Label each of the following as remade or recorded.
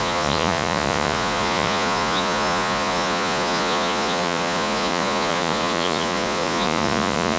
remade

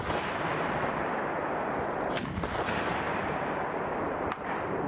remade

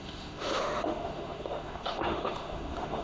remade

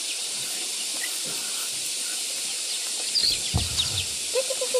remade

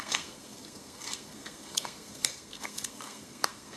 remade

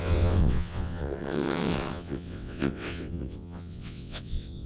remade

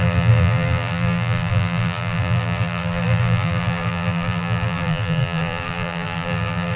remade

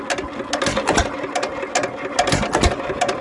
recorded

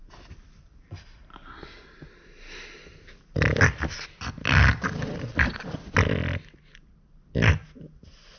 recorded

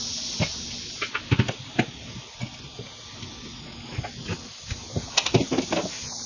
recorded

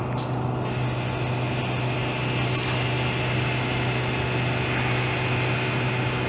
recorded